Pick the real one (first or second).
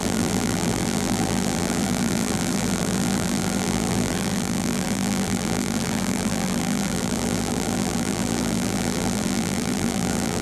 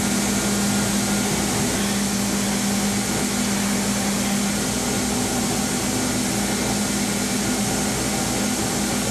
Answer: second